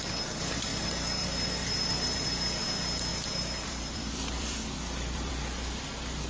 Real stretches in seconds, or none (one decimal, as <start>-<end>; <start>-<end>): 0.0-0.7; 2.6-3.1; 5.3-6.3